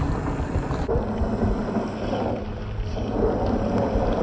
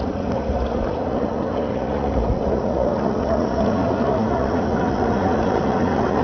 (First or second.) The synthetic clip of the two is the second